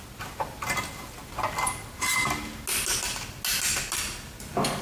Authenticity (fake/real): real